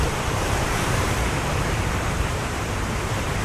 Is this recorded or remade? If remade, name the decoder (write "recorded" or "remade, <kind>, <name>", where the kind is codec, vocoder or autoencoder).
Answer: remade, vocoder, BigVGAN v2